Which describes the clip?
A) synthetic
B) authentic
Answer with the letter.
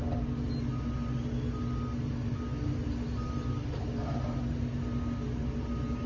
B